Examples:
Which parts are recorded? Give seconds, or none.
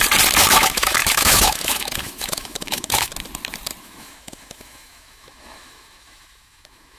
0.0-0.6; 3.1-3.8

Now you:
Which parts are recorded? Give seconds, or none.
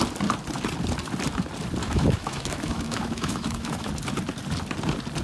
0.0-1.8; 3.9-5.2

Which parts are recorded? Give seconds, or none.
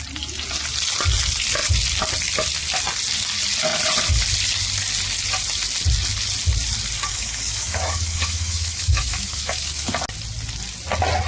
0.0-7.1; 9.9-11.3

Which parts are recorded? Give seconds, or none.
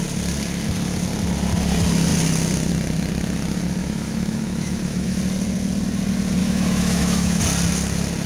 0.0-3.8; 5.2-6.4; 7.4-8.3